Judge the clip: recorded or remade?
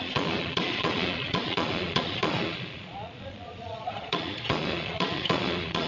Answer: remade